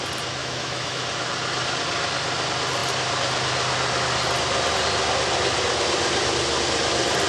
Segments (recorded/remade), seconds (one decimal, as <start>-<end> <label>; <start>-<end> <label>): 0.0-0.4 recorded; 0.4-1.1 remade; 1.1-7.3 recorded